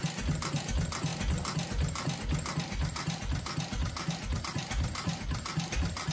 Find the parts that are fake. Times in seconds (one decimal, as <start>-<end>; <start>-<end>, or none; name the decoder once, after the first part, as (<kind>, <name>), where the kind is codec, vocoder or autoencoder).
none